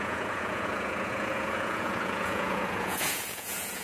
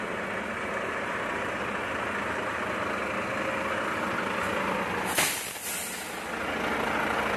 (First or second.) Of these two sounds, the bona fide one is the second